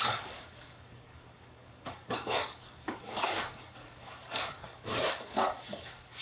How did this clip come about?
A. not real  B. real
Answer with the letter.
A